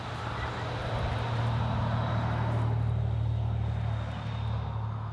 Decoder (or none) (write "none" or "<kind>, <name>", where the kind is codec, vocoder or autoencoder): none